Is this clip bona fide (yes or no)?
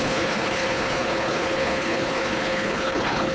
no